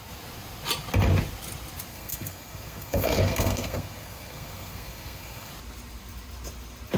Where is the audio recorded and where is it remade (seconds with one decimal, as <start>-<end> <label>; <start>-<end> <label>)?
0.0-1.9 recorded; 1.9-5.5 remade; 5.5-7.0 recorded